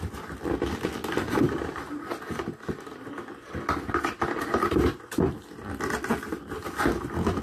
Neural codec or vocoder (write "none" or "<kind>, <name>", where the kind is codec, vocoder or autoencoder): none